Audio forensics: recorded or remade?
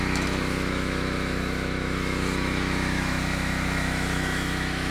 remade